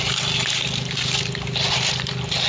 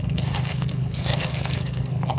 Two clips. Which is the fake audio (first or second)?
second